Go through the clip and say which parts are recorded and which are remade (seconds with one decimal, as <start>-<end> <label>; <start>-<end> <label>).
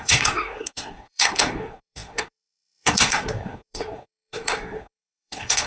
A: 0.0-5.7 remade